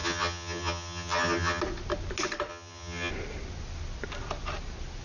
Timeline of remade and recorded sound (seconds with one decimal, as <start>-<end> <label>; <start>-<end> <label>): 0.0-1.6 remade; 1.6-2.5 recorded; 2.5-3.1 remade; 3.1-5.0 recorded